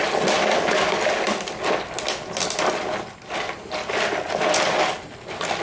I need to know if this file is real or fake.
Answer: real